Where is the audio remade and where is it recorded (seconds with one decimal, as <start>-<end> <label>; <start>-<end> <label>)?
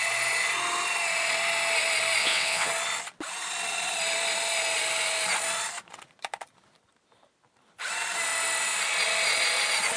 0.0-2.2 recorded; 2.2-2.7 remade; 2.7-10.0 recorded